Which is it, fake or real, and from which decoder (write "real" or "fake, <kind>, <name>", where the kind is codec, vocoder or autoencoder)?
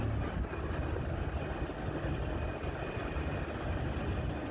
real